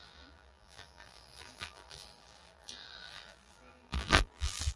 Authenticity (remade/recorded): remade